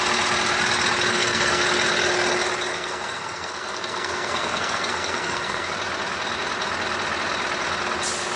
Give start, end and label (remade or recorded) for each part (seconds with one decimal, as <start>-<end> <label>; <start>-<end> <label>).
0.0-1.1 recorded; 1.1-1.6 remade; 1.6-2.7 recorded; 2.7-5.7 remade; 5.7-8.4 recorded